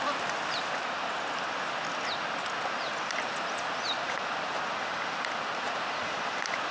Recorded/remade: recorded